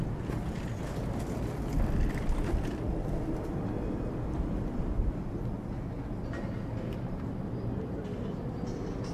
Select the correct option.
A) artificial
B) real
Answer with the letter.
B